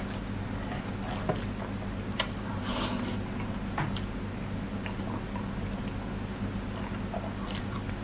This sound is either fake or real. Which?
real